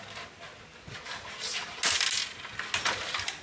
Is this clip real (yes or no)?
yes